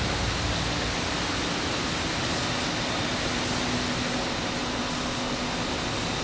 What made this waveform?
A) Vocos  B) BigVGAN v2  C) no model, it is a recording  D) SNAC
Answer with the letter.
C